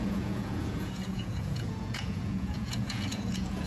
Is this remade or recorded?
remade